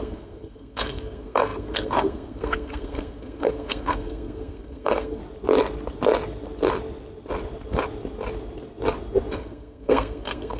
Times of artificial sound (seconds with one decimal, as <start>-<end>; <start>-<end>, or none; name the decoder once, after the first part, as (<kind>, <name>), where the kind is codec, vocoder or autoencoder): 0.0-5.2 (codec, SNAC); 9.3-10.6